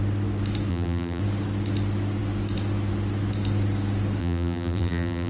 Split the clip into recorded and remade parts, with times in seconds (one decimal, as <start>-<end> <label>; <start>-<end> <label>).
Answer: 0.0-0.7 recorded; 0.7-1.2 remade; 1.2-4.2 recorded; 4.2-5.3 remade